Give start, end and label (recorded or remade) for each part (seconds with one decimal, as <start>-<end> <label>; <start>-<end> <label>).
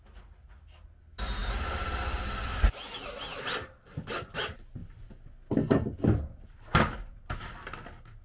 0.0-8.2 recorded